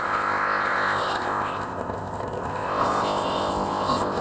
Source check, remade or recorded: remade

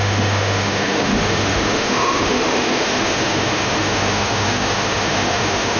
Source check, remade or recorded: remade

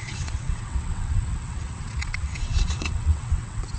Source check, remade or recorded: remade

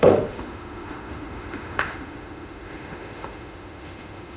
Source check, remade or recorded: remade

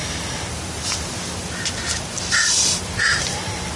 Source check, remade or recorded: recorded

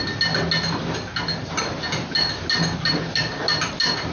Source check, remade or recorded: recorded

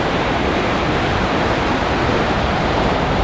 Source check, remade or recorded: remade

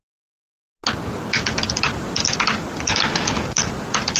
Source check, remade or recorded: recorded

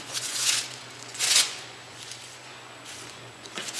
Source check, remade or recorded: remade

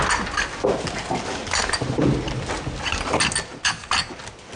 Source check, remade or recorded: recorded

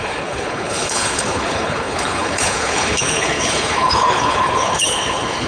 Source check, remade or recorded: remade